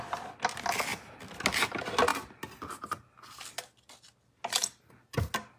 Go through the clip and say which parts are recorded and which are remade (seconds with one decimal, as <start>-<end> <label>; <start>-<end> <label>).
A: 0.0-5.6 recorded